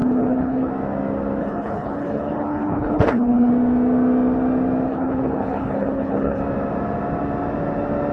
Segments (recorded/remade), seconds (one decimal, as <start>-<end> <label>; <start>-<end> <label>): 0.0-0.7 remade; 0.7-1.4 recorded; 1.4-3.5 remade; 3.5-4.9 recorded; 4.9-6.4 remade; 6.4-8.1 recorded